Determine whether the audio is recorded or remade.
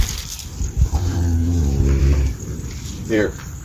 remade